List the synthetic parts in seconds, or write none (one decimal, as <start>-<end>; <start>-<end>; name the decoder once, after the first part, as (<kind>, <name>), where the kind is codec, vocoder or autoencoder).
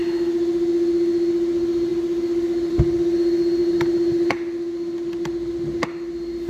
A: none